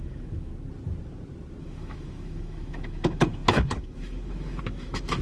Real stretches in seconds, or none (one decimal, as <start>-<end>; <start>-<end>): 0.5-1.6

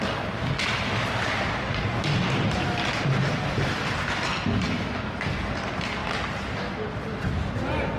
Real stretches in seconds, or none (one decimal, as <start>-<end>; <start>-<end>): 0.0-8.0

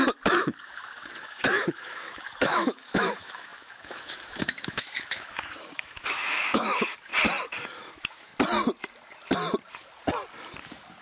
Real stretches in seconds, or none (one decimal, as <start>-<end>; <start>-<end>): 7.1-7.8; 8.3-11.0